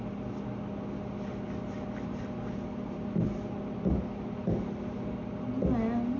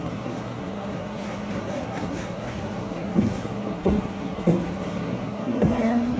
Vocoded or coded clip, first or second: second